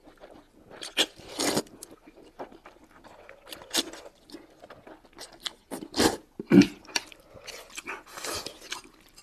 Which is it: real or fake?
real